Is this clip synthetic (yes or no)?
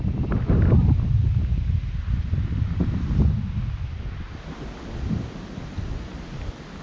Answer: no